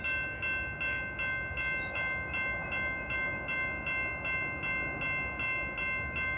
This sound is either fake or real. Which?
real